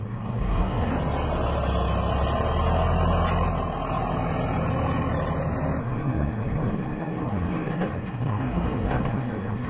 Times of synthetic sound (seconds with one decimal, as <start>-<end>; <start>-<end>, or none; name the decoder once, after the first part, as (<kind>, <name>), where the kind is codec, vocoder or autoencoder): 0.0-0.9 (codec, SNAC); 5.8-9.7

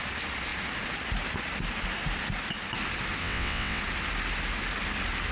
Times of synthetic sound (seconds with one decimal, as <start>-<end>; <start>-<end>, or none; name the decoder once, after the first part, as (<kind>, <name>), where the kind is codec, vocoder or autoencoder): 3.2-3.8 (vocoder, WaveNeXt)

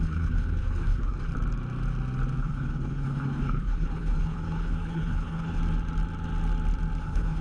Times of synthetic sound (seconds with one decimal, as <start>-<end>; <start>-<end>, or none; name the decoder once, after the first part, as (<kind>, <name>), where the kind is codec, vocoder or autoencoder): 0.0-1.3 (codec, HILCodec); 2.4-5.6; 7.0-7.4